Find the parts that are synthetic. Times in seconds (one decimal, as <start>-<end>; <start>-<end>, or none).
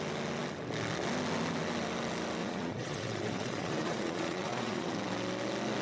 2.4-4.9